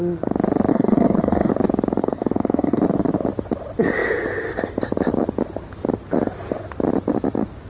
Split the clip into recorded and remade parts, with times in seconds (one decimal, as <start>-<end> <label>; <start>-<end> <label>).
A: 0.0-0.7 recorded; 0.7-1.5 remade; 1.5-2.0 recorded; 2.0-2.8 remade; 2.8-7.7 recorded